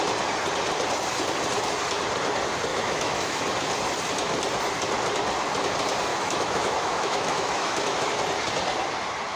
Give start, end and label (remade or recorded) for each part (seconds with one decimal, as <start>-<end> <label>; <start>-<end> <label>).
0.0-2.7 recorded; 2.7-3.4 remade; 3.4-6.1 recorded; 6.1-8.1 remade; 8.1-9.4 recorded